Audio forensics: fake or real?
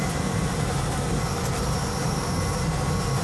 fake